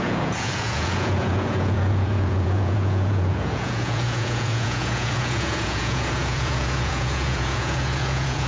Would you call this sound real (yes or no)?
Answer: no